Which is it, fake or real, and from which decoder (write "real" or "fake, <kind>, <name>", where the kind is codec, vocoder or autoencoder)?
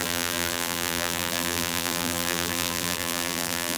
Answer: fake, vocoder, BigVGAN v2